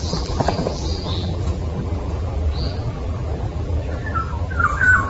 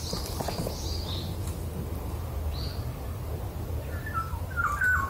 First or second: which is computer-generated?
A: first